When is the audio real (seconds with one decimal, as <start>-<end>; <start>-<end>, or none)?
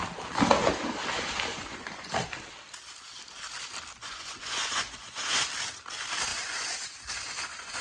0.0-1.5; 2.1-3.9; 5.5-6.3